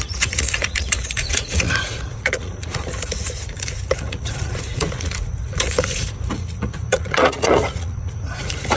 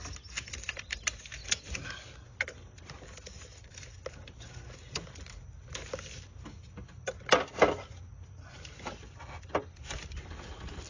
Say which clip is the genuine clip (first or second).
second